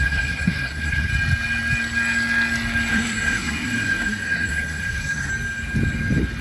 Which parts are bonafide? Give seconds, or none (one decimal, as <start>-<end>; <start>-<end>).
1.1-2.9; 5.3-6.4